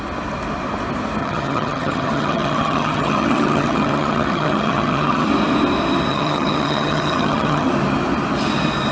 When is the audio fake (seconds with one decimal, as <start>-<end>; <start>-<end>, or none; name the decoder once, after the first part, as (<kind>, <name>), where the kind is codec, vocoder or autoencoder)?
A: 1.2-5.3 (vocoder, HiFi-GAN); 6.1-7.7